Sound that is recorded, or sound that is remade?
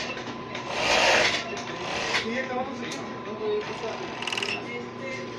recorded